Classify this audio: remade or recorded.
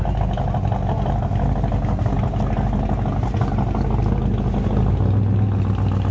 recorded